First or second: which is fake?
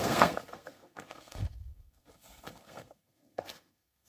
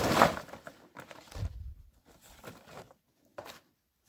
first